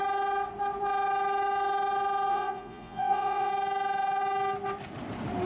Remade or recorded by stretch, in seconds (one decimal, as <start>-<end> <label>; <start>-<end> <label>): 0.0-2.3 recorded; 2.3-3.5 remade; 3.5-5.5 recorded